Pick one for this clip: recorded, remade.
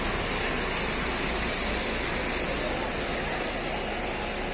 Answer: recorded